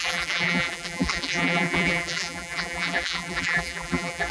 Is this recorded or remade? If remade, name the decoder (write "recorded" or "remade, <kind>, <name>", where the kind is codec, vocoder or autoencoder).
remade, vocoder, BigVGAN v2